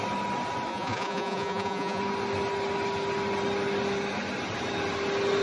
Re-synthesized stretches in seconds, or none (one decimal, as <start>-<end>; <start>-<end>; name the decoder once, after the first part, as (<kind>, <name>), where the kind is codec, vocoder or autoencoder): 0.7-2.0 (vocoder, Vocos)

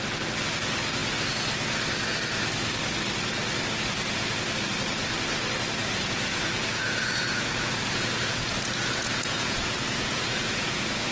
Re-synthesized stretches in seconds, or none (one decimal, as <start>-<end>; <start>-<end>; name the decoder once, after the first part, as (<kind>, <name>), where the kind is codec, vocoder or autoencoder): 5.8-11.1 (vocoder, Vocos)

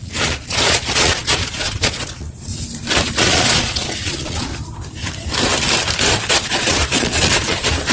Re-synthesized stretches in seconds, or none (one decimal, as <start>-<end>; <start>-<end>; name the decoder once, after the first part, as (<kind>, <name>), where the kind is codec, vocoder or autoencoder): 0.0-2.5 (vocoder, Vocos); 3.0-4.5; 6.3-7.9